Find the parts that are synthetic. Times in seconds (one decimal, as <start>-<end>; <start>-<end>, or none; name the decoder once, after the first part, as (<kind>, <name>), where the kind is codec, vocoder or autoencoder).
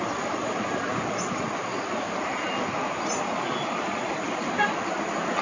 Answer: none